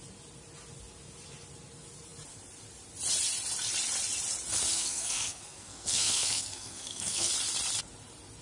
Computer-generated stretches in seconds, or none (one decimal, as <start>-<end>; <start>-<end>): 4.7-7.3